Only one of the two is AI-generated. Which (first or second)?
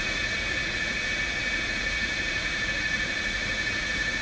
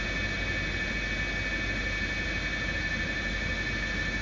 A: first